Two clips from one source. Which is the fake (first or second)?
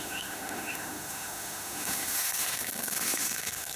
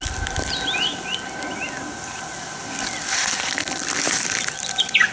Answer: first